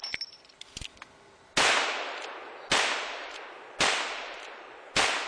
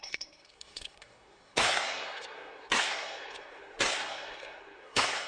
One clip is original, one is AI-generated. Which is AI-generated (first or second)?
second